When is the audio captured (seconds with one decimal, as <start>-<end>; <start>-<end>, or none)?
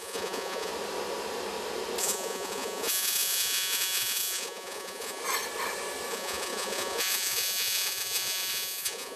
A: 0.7-2.0; 5.2-6.1